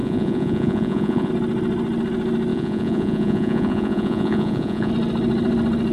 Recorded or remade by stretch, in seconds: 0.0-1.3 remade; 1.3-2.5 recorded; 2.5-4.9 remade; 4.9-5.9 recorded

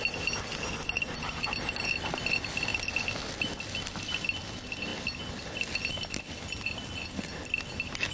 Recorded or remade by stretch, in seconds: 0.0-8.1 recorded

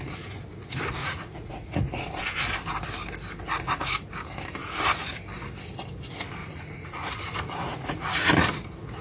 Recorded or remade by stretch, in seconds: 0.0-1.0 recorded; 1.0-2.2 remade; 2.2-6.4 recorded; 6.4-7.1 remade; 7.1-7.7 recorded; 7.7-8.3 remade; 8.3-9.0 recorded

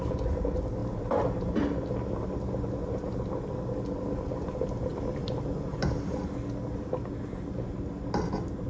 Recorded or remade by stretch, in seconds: 0.0-8.7 recorded

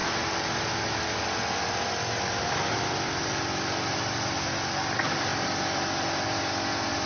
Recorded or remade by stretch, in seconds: 0.0-7.1 recorded